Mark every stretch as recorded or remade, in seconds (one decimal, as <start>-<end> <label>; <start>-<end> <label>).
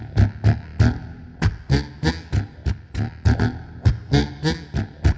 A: 0.0-5.2 recorded